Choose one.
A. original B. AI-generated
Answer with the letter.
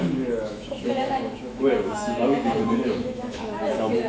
B